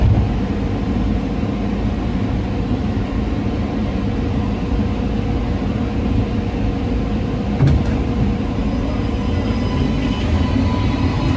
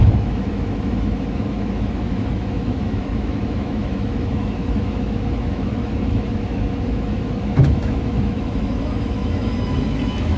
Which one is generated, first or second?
second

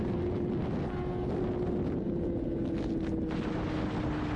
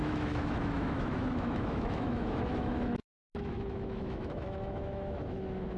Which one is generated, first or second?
second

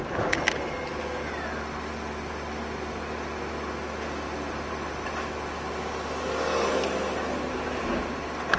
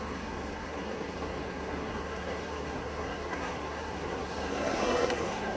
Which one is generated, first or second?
second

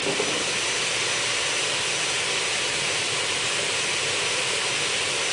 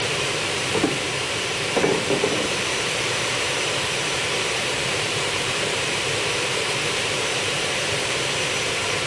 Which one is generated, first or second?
second